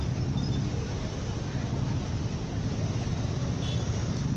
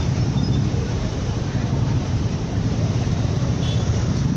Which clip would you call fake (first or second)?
second